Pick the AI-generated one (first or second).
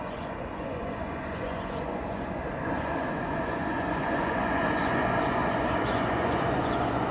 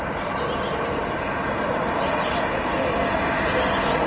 first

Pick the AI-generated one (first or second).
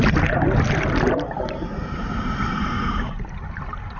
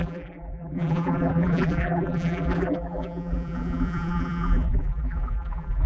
second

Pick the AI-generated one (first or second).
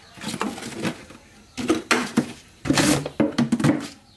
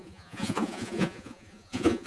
second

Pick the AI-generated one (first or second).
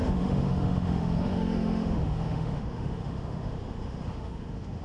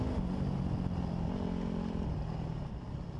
first